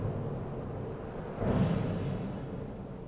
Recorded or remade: recorded